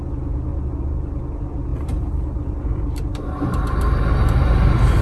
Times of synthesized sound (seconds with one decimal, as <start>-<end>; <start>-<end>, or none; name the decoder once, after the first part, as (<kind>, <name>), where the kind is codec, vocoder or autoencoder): 0.5-1.0 (vocoder, BigVGAN v2); 1.7-5.0